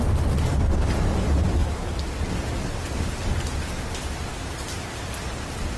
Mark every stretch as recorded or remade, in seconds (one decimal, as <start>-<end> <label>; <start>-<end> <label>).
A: 0.0-5.8 recorded